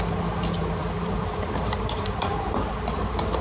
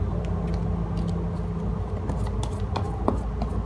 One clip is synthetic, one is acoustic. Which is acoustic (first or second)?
second